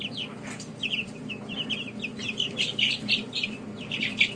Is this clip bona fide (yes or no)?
no